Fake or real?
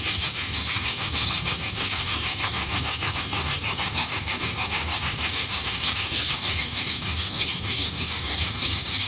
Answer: fake